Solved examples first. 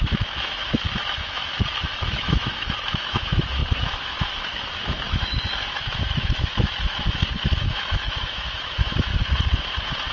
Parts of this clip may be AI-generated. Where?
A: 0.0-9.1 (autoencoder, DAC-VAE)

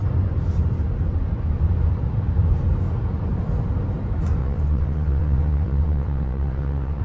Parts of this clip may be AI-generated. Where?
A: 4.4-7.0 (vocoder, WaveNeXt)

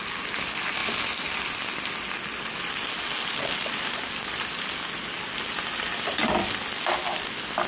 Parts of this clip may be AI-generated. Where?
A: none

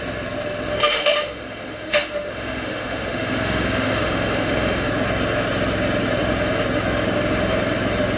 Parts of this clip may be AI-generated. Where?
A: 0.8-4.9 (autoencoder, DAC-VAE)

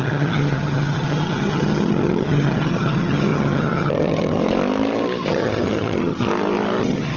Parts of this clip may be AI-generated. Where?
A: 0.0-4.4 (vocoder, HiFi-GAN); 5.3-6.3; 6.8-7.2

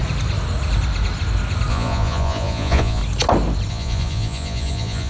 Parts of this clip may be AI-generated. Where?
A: 1.7-3.0 (vocoder, Vocos); 3.7-5.1

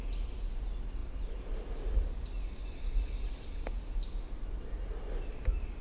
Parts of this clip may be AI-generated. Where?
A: none

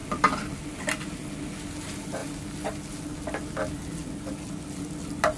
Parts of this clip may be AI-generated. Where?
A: none